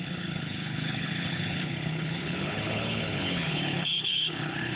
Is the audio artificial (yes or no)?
yes